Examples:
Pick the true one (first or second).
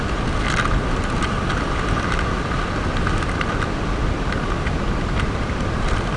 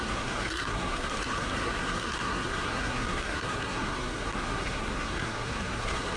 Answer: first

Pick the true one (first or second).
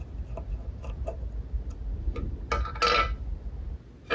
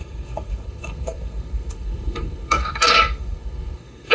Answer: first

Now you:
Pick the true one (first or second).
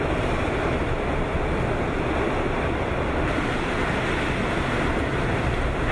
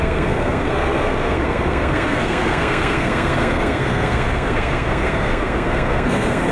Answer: first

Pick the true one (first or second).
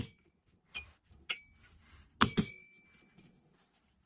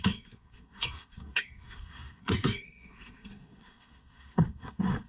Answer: first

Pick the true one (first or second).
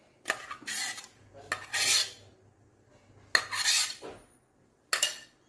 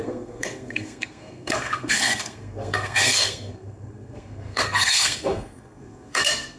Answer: first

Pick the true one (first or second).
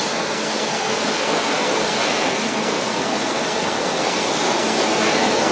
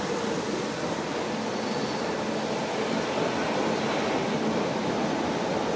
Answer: second